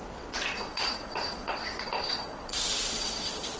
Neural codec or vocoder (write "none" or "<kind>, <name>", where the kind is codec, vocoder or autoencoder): vocoder, WaveNeXt